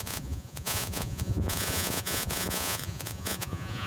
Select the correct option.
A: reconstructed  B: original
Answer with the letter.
A